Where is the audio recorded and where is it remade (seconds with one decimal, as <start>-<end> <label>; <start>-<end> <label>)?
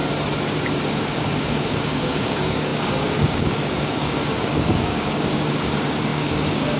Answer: 0.0-0.9 recorded; 0.9-6.8 remade